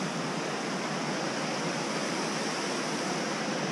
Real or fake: real